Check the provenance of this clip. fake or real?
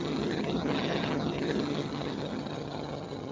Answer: fake